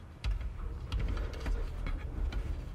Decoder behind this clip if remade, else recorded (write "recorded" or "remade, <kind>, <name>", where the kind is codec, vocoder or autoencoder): recorded